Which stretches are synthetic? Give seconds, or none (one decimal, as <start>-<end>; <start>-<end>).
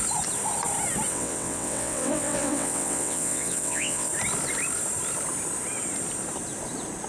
1.1-4.1